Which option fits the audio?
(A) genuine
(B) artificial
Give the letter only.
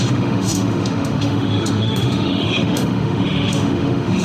B